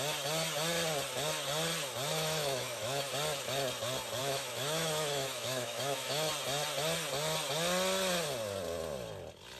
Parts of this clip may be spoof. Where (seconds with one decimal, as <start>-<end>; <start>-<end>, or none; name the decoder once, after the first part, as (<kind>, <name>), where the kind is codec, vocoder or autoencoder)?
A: 2.1-3.1 (autoencoder, DAC-VAE); 4.2-6.3

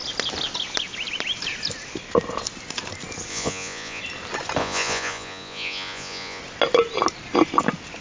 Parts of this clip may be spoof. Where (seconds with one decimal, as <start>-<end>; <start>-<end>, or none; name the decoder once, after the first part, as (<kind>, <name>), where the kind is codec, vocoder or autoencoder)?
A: 3.3-4.0 (vocoder, Vocos); 4.6-6.4

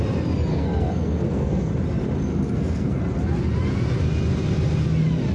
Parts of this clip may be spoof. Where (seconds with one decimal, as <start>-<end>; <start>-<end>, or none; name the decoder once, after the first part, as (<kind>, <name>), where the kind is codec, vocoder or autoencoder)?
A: 0.5-1.7 (codec, SNAC); 2.3-3.0

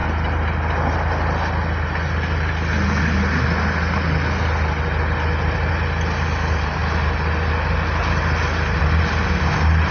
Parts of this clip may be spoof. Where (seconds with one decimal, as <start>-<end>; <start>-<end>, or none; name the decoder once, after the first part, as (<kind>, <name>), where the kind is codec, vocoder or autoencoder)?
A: none

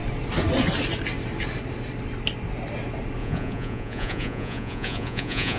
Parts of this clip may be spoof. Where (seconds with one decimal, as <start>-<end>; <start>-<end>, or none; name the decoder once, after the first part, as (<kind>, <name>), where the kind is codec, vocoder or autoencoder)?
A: 3.2-5.6 (vocoder, Vocos)

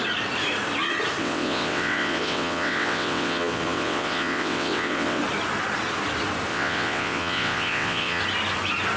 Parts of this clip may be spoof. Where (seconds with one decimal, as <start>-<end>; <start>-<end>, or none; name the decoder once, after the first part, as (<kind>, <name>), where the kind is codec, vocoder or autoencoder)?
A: 1.2-5.2 (vocoder, WaveNeXt); 6.5-8.2